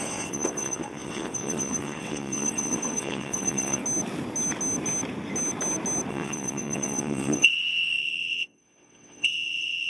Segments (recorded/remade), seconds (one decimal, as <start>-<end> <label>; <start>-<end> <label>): 0.0-3.8 remade; 3.8-6.1 recorded; 6.1-9.9 remade